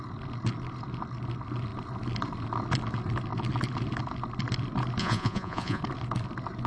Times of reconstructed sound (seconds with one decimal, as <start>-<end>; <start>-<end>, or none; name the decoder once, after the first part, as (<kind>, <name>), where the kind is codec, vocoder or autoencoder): 5.0-5.8 (vocoder, Vocos)